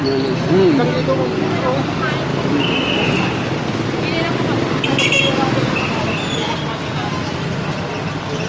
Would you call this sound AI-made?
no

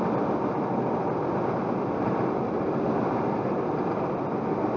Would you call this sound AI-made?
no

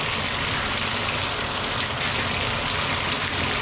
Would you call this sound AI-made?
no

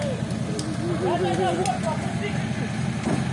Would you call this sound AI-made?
no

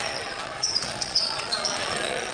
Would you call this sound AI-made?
yes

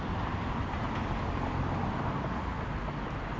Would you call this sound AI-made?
no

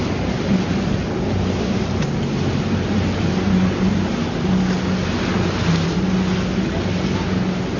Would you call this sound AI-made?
no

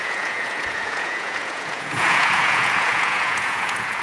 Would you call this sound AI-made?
yes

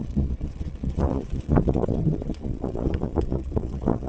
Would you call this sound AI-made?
yes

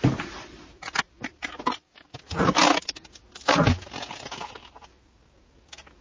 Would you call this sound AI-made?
no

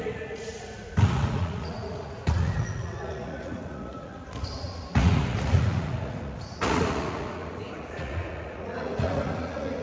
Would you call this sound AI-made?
yes